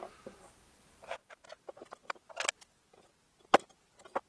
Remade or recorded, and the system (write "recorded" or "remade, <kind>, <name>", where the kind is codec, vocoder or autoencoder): recorded